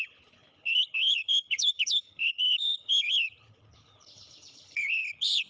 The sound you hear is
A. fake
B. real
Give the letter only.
A